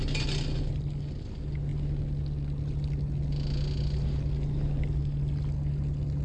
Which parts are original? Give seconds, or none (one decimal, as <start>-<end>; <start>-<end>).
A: 0.0-6.2